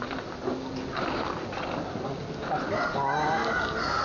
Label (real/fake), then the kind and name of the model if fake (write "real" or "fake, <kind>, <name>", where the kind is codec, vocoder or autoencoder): real